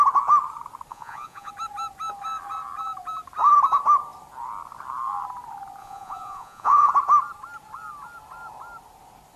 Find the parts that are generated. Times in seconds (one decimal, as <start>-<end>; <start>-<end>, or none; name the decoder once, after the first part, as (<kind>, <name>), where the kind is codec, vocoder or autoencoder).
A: 0.9-1.5 (vocoder, Vocos); 5.8-6.9